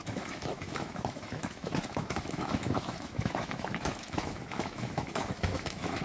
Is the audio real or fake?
fake